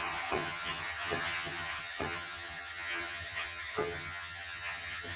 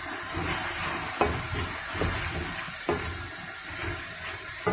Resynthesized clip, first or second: first